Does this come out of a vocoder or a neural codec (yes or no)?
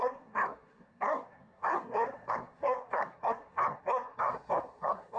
yes